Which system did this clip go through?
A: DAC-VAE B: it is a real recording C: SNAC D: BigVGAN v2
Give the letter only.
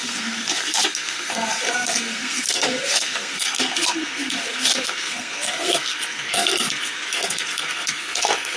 C